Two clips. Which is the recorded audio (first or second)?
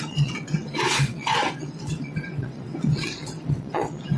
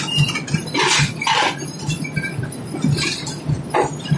second